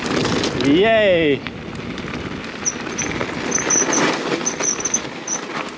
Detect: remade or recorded recorded